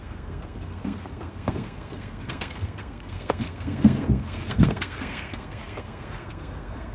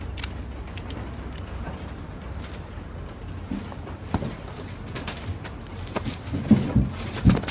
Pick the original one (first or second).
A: second